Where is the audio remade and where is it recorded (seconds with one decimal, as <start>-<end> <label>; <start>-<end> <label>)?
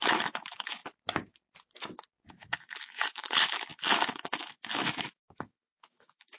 0.0-0.8 remade; 0.8-2.3 recorded; 2.3-6.4 remade